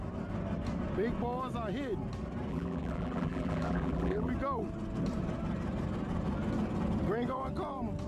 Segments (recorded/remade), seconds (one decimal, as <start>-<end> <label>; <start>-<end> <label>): 0.0-2.5 recorded; 2.5-4.3 remade; 4.3-8.1 recorded